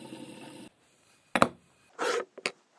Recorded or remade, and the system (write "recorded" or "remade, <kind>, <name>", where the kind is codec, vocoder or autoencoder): recorded